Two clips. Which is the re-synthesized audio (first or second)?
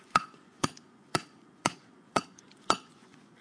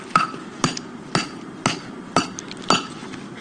first